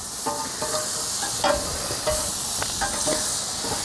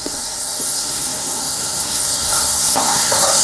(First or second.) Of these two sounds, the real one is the first